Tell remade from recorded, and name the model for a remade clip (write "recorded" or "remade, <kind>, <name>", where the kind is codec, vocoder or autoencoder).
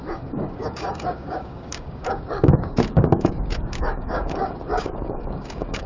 remade, codec, DAC